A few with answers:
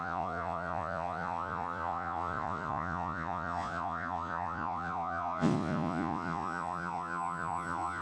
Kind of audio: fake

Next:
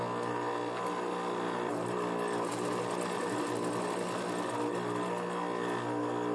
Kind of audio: real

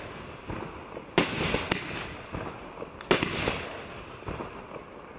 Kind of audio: real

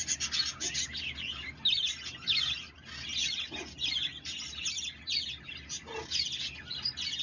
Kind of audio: real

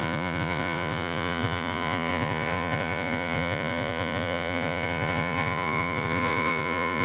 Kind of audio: fake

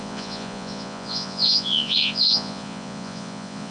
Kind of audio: fake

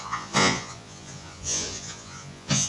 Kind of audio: fake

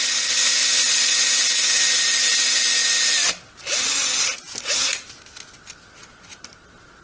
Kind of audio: real